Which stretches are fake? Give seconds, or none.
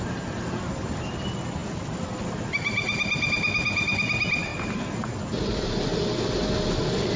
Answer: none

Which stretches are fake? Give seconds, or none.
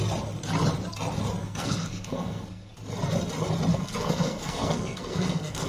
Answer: 1.4-2.7 (codec, SNAC); 3.7-5.7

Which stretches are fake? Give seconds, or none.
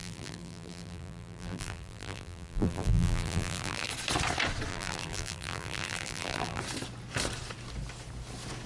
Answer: 0.0-3.9 (vocoder, BigVGAN v2); 4.7-6.6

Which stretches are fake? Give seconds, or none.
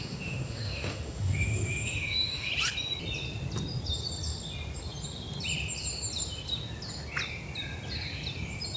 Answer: 0.0-2.5 (autoencoder, DAC-VAE)